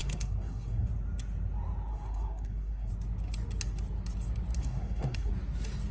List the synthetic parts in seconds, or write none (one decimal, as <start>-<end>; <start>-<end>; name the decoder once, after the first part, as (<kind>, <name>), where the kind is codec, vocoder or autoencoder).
0.0-0.9 (codec, SNAC); 1.9-2.9; 4.6-5.3